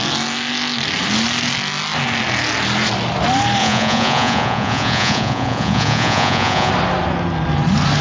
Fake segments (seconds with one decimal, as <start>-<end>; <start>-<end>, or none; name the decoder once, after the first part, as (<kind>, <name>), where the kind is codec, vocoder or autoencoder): 3.6-6.7 (vocoder, Vocos)